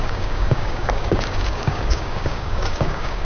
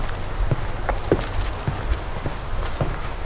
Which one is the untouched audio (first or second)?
second